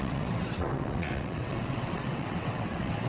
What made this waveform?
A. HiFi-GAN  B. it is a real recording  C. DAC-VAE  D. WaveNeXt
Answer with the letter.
D